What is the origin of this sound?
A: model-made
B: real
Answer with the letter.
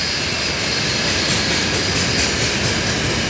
B